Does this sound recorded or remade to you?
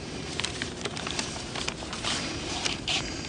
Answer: remade